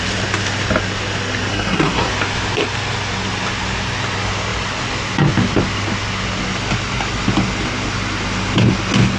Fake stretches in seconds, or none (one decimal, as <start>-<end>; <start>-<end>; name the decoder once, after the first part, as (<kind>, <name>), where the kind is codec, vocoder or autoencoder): 1.5-2.1 (codec, SNAC)